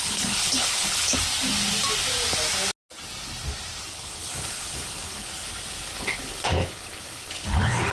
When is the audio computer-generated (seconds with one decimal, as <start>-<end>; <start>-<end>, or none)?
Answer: 0.0-1.2; 3.8-5.3; 6.0-7.9